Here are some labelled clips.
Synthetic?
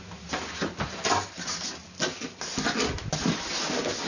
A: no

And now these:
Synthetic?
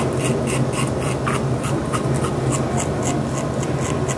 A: no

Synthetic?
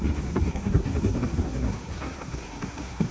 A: yes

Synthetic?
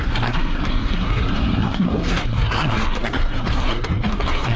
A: yes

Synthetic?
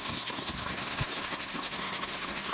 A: yes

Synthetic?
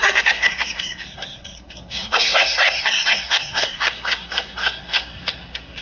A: yes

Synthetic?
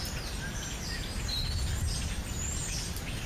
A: no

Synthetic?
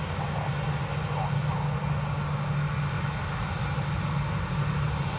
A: no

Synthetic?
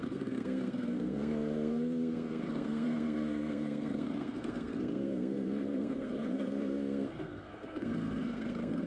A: yes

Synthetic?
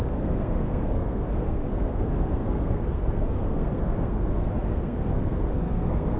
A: yes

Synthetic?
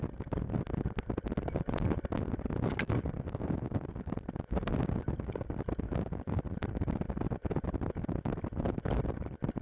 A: no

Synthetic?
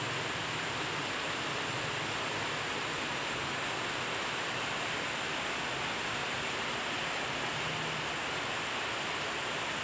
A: no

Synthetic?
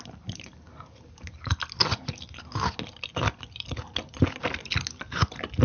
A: no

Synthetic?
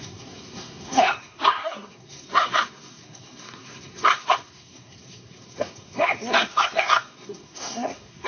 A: yes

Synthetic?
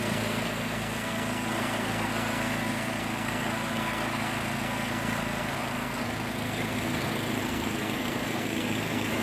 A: yes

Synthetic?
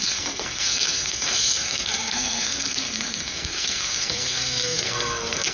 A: yes